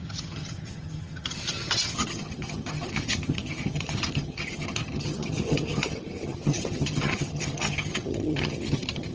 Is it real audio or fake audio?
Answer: fake